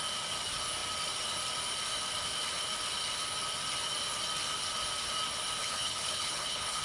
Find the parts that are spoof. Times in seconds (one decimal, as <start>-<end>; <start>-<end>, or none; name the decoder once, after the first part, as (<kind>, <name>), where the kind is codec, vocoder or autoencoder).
5.6-6.8 (codec, HILCodec)